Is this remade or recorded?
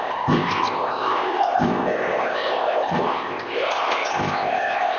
remade